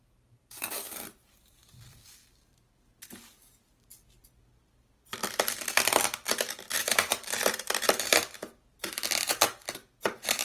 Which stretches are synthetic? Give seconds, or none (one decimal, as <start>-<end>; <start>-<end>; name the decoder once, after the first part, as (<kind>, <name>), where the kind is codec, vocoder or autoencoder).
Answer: 0.0-1.6 (vocoder, BigVGAN v2); 6.7-10.4